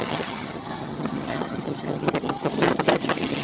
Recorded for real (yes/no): no